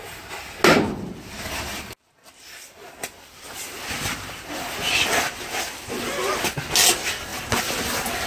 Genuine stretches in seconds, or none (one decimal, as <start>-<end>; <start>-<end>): 0.0-8.3